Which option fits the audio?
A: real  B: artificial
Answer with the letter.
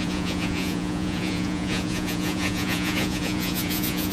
B